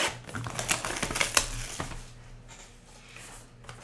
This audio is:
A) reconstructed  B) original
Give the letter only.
B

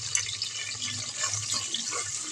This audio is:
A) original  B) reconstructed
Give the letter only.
A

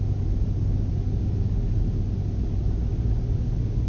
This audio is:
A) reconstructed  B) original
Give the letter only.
B